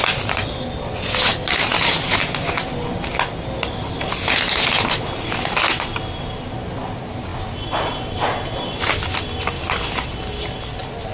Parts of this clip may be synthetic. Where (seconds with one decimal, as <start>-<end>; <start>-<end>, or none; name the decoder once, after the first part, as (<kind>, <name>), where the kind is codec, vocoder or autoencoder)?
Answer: none